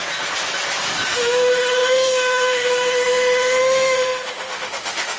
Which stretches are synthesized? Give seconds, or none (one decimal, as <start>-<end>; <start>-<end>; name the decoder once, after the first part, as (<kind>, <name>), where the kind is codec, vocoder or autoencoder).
1.1-5.2 (autoencoder, DAC-VAE)